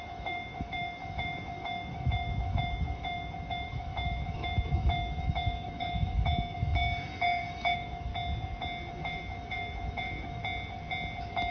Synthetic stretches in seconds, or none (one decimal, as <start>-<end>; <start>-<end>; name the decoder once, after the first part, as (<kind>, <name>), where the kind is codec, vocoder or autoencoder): 0.0-8.1 (autoencoder, DAC-VAE); 8.9-10.4